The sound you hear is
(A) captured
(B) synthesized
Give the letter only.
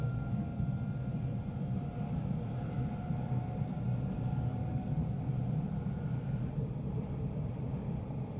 A